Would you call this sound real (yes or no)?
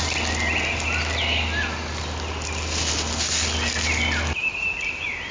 yes